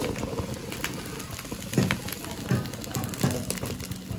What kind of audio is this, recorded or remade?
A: recorded